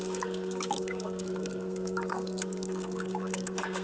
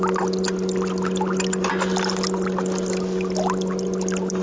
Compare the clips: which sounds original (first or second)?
second